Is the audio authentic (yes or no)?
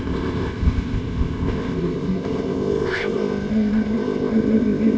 no